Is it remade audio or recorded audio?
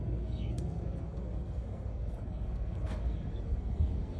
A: remade